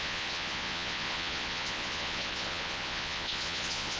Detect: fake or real fake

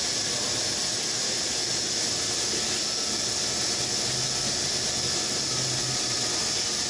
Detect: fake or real real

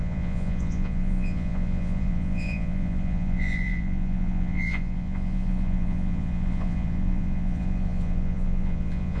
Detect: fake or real fake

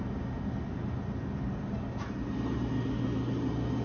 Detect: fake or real real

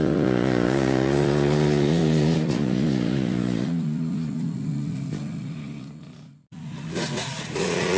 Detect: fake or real fake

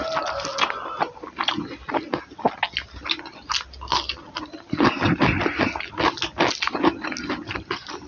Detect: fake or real real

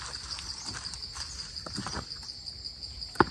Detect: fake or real real